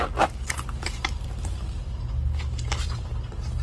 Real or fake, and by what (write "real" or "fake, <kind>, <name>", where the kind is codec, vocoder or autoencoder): real